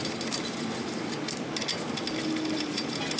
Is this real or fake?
real